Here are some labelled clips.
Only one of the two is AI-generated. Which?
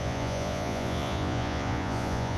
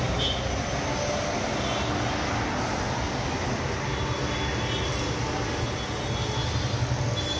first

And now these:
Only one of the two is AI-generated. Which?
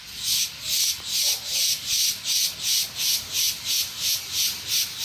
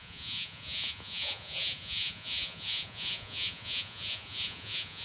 second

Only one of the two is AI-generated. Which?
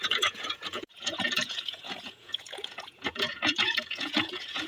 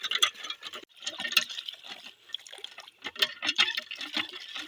first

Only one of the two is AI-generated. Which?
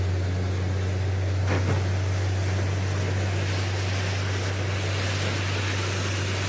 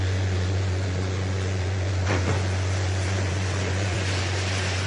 second